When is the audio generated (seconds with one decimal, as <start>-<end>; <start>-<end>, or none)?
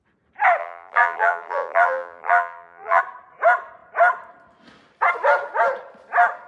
0.6-3.0